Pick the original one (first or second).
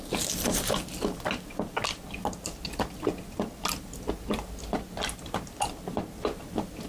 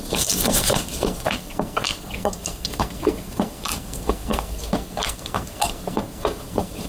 first